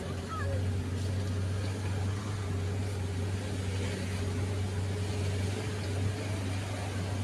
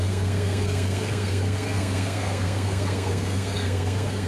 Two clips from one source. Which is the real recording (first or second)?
first